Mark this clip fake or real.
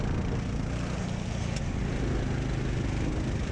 real